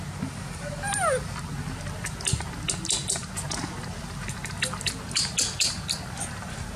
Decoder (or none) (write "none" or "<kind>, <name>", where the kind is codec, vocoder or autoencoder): none